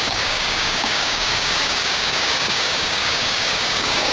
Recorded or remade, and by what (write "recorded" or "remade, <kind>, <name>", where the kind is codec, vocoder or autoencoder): remade, codec, DAC